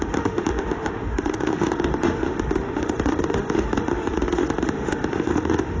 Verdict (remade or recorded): remade